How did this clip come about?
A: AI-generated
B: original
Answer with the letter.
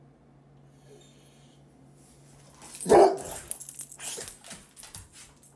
B